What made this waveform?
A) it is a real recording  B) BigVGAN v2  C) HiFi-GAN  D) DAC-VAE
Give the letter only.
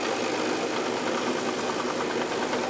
A